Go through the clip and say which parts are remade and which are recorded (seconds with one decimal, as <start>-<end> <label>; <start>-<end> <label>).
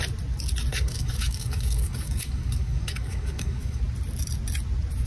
0.0-0.7 recorded; 0.7-3.8 remade; 3.8-5.1 recorded